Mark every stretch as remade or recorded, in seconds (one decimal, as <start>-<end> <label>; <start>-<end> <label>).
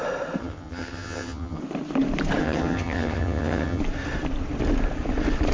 0.0-0.4 recorded; 0.4-1.6 remade; 1.6-2.4 recorded; 2.4-3.8 remade; 3.8-5.5 recorded